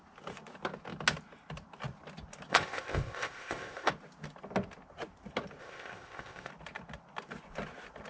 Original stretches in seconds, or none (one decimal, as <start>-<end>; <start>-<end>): 0.0-2.5; 3.9-5.6; 6.5-8.1